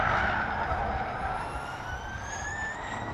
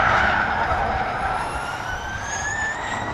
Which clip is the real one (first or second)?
first